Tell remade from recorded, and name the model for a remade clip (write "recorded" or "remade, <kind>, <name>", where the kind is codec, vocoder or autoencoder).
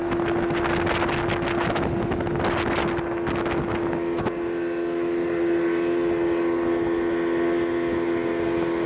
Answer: recorded